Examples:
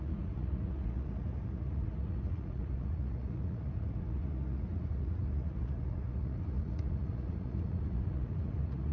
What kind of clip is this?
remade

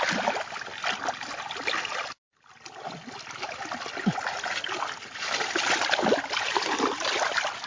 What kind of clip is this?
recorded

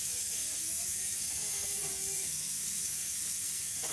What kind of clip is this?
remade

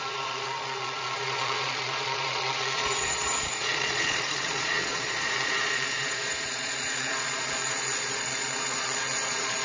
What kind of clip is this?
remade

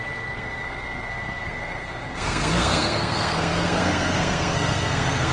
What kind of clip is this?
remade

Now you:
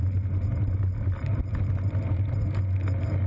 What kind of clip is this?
recorded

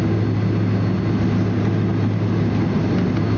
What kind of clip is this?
recorded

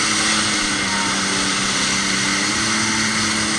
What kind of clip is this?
recorded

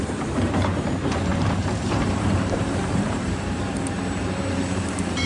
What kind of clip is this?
remade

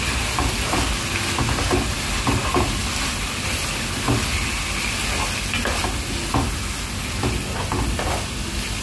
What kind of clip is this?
recorded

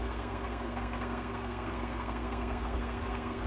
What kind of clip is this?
remade